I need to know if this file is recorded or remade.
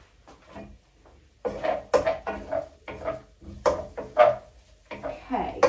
recorded